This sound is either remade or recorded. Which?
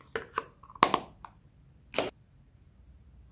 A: recorded